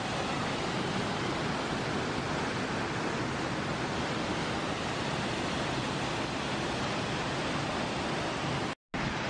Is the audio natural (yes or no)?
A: yes